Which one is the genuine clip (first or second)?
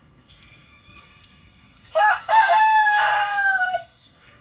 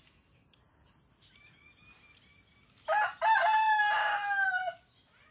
second